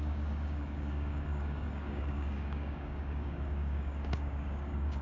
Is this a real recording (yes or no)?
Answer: no